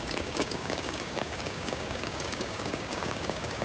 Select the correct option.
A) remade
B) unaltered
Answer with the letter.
A